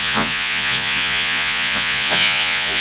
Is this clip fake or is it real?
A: fake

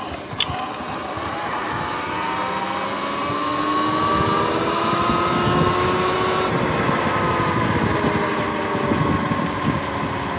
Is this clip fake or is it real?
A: real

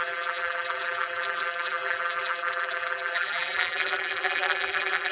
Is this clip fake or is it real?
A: fake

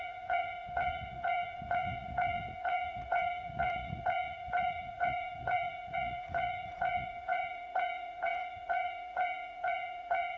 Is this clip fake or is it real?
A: fake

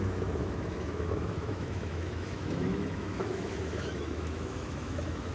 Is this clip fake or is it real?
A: fake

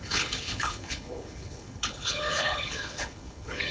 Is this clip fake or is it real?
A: fake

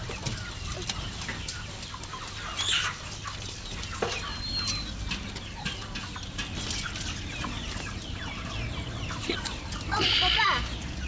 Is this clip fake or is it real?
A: real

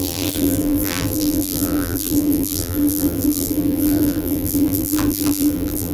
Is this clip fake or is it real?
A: fake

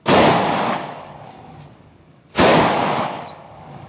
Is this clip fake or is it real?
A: fake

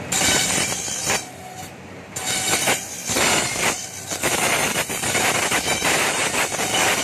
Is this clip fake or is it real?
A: fake